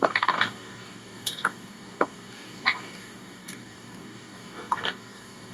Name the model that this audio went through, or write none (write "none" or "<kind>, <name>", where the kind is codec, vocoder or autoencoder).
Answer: codec, DAC